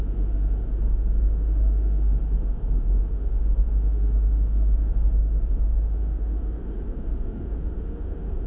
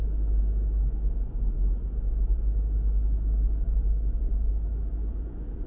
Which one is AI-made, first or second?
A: first